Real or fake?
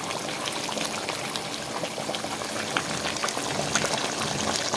real